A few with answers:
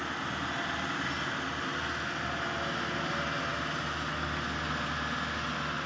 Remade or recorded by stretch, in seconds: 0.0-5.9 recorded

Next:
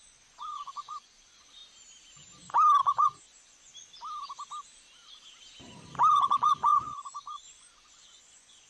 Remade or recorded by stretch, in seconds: 0.0-1.6 remade; 1.6-2.8 recorded; 2.8-3.7 remade; 3.7-6.1 recorded; 6.1-8.7 remade

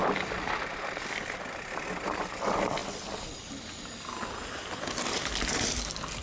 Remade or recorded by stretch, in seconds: 0.0-6.2 recorded

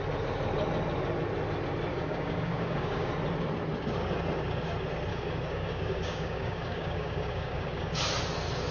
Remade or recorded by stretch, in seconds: 0.0-1.9 recorded; 1.9-3.1 remade; 3.1-5.1 recorded; 5.1-8.1 remade; 8.1-8.7 recorded

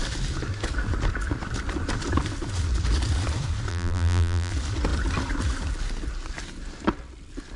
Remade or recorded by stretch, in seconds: 0.0-3.7 recorded; 3.7-4.5 remade; 4.5-7.6 recorded

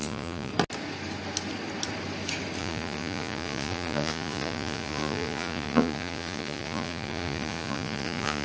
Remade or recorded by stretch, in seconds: 0.0-0.5 remade; 0.5-2.6 recorded; 2.6-8.4 remade

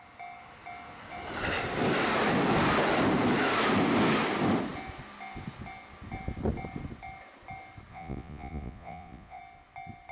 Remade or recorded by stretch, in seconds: 0.0-7.9 recorded; 7.9-9.4 remade; 9.4-10.1 recorded